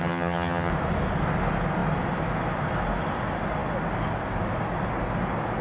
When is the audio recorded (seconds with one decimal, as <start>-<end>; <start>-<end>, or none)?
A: 0.7-5.6